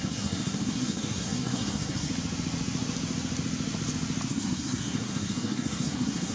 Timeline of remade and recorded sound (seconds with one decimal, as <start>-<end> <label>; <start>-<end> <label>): 0.0-2.1 remade; 2.1-4.3 recorded; 4.3-6.3 remade